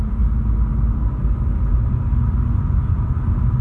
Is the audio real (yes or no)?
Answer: yes